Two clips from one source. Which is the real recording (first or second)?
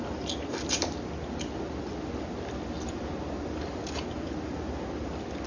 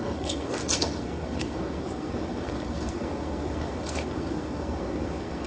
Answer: first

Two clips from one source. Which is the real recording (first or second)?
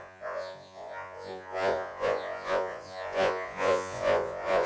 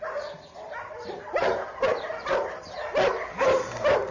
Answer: second